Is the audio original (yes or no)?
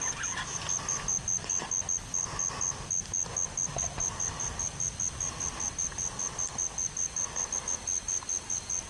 yes